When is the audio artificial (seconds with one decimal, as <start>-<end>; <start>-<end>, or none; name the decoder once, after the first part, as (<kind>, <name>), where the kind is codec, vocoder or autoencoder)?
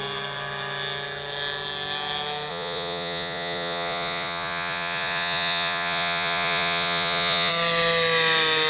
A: 2.5-7.5 (vocoder, Vocos)